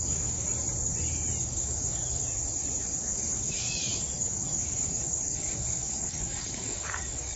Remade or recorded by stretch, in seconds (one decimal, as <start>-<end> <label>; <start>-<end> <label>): 0.0-0.5 remade; 0.5-1.4 recorded; 1.4-2.2 remade; 2.2-3.0 recorded; 3.0-7.4 remade